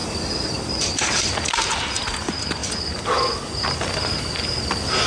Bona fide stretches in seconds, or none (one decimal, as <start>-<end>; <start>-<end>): 2.0-2.6; 3.4-5.1